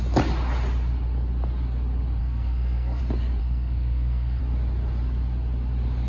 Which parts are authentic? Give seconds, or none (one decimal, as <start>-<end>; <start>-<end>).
0.0-2.2; 3.0-3.4; 4.4-6.1

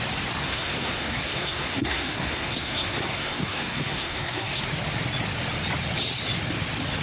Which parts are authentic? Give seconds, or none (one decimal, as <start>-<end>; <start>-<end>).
0.0-0.4; 4.6-7.0

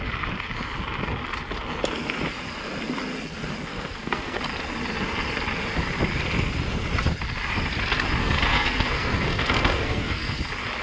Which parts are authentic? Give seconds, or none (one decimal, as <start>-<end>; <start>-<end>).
0.0-3.7; 4.4-8.2; 10.4-10.8

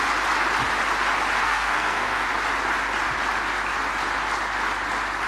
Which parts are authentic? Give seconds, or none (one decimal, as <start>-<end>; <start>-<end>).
0.0-1.4; 2.3-5.3

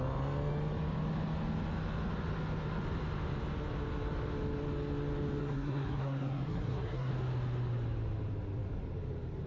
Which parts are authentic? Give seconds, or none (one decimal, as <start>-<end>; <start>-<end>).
0.0-5.4; 7.1-9.5

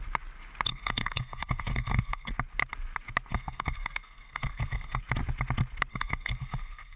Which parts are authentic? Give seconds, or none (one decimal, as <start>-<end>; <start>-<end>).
0.0-0.7; 2.3-3.3; 5.0-5.9

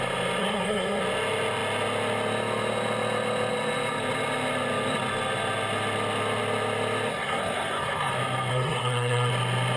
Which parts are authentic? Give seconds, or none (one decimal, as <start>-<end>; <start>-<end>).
0.0-0.4; 1.0-7.1; 8.1-8.5; 9.3-9.8